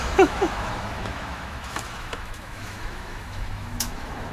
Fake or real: fake